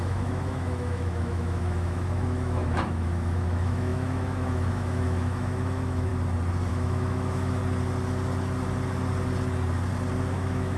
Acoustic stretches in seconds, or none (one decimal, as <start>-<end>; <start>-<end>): 6.1-6.7; 7.6-10.3